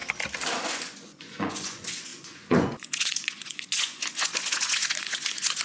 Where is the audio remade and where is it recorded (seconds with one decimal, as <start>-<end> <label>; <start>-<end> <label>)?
0.0-0.6 recorded; 0.6-5.6 remade